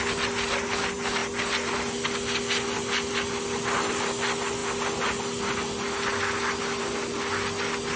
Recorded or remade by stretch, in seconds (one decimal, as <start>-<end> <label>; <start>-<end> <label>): 0.0-8.0 recorded